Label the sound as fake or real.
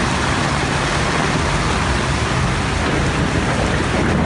real